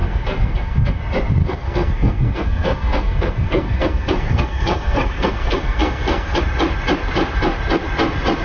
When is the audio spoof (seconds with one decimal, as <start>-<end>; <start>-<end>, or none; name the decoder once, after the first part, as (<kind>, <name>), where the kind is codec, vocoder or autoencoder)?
0.0-1.0 (codec, SNAC); 1.4-6.4